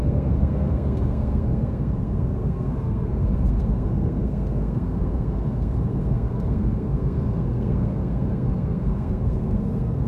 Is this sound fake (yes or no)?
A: yes